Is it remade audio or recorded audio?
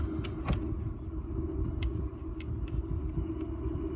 recorded